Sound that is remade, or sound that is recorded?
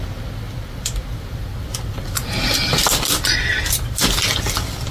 recorded